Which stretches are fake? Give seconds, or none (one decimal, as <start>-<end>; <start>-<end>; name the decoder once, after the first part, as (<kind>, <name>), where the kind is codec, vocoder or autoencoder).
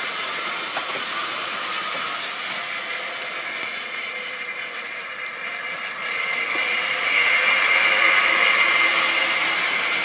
4.1-5.3 (vocoder, BigVGAN v2)